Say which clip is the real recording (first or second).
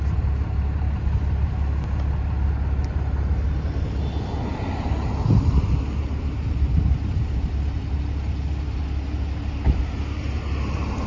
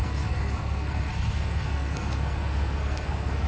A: first